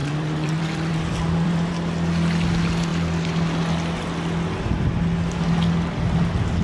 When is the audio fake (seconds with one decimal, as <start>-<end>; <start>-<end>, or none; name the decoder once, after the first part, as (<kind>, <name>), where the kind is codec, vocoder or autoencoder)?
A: 0.0-1.7 (vocoder, BigVGAN v2)